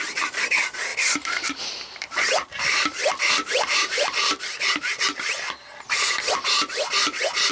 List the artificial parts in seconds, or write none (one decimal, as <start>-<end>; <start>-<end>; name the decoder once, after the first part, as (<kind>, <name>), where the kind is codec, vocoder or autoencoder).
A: 0.9-4.4 (vocoder, BigVGAN v2)